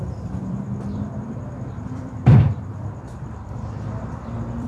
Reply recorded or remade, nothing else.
remade